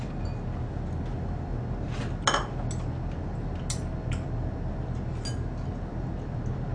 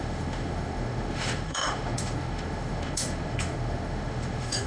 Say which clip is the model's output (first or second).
second